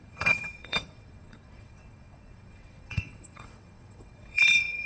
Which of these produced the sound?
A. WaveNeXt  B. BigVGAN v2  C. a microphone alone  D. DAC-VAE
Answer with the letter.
A